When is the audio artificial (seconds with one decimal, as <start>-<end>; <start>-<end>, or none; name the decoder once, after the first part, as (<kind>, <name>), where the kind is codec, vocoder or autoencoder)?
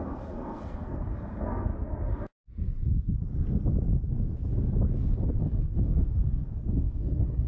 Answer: 0.0-1.7 (codec, SNAC); 5.4-7.5